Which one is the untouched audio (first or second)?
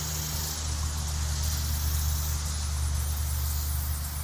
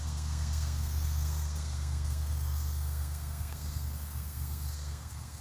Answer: first